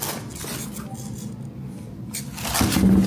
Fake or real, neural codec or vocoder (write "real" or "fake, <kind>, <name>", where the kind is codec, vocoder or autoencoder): real